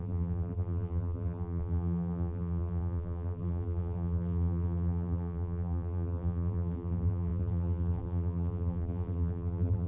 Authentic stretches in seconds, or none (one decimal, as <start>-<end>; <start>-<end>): none